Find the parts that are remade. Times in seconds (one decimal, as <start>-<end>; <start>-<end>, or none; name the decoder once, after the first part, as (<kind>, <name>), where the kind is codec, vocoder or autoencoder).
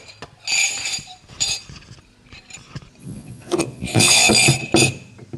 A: 3.0-4.3 (vocoder, Vocos)